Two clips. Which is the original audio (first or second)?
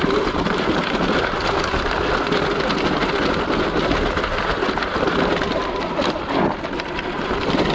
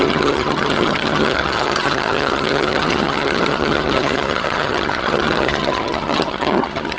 first